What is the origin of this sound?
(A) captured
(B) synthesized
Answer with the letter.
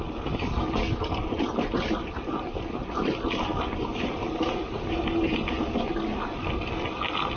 A